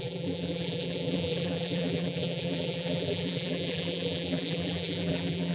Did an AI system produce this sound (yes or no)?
yes